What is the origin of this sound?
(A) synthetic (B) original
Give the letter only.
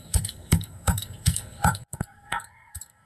A